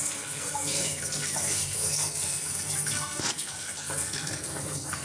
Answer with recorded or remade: remade